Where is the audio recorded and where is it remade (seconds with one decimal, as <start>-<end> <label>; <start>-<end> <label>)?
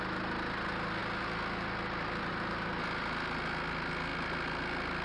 0.0-5.0 recorded